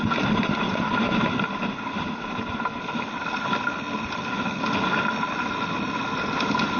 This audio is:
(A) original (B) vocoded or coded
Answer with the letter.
A